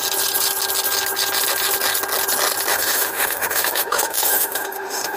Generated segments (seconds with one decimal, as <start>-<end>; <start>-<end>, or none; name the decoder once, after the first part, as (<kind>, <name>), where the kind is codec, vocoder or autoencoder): 2.7-5.2 (autoencoder, DAC-VAE)